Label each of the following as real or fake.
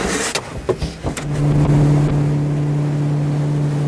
real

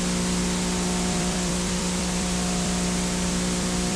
fake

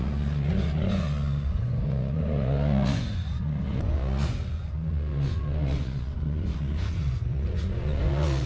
fake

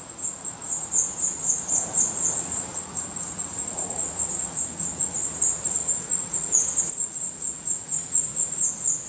fake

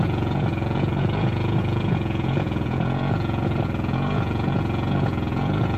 fake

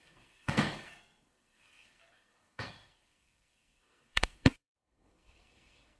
fake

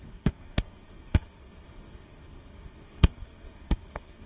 fake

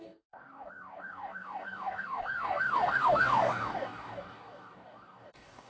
fake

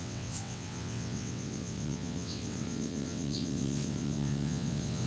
fake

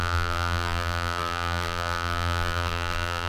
fake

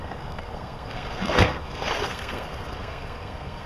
fake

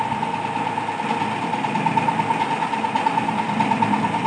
real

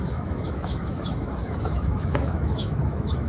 fake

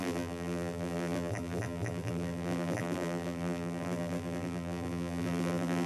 fake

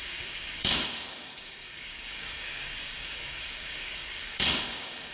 fake